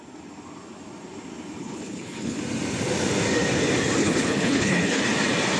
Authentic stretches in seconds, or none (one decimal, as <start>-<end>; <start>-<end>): 0.0-1.6; 2.4-4.0; 5.0-5.6